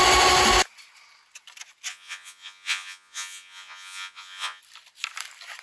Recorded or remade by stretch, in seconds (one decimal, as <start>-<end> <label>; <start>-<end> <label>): 0.0-1.9 recorded; 1.9-4.6 remade; 4.6-5.6 recorded